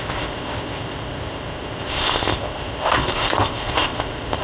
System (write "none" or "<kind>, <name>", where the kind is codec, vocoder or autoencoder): codec, ZipCodec